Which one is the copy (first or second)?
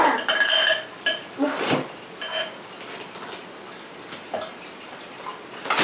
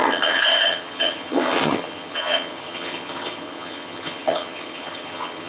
second